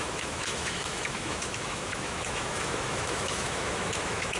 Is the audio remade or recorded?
remade